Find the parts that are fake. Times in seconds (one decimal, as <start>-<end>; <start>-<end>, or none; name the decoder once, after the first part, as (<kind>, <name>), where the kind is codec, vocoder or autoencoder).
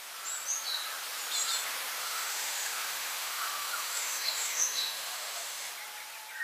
2.0-5.7 (autoencoder, DAC-VAE)